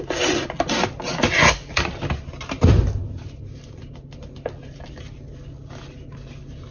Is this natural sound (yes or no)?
yes